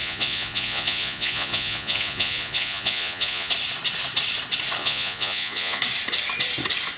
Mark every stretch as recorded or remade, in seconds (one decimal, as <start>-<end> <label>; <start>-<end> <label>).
0.0-3.5 remade; 3.5-4.8 recorded; 4.8-5.8 remade; 5.8-7.0 recorded